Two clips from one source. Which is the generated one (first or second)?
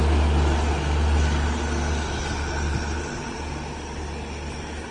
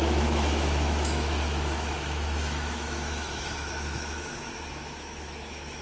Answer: second